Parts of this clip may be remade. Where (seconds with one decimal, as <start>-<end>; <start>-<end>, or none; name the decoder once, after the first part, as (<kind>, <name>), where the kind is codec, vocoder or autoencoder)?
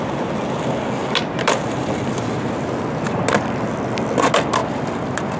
1.0-2.7 (vocoder, BigVGAN v2); 4.6-5.4